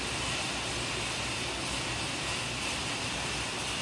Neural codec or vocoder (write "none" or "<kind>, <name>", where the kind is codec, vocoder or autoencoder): none